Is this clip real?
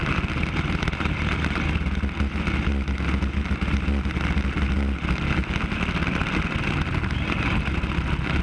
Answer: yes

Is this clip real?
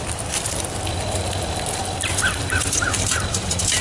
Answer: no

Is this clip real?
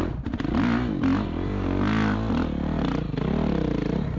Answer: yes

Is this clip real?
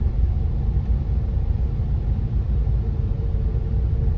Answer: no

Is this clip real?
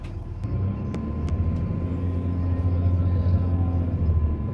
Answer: yes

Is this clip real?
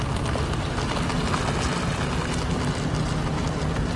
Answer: yes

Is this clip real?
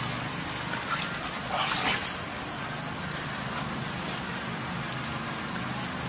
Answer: yes